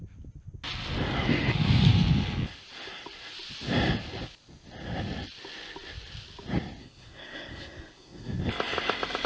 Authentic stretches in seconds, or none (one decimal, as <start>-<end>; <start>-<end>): 0.0-6.8; 8.4-9.3